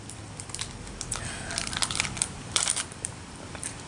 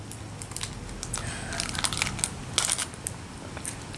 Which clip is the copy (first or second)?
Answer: first